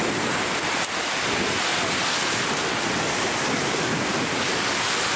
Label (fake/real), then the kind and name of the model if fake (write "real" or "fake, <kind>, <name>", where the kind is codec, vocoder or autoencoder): real